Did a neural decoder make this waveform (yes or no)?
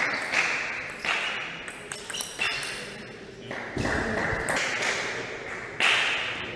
no